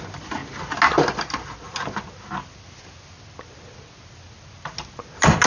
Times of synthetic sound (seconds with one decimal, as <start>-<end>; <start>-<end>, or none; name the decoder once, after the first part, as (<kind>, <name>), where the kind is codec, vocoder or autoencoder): none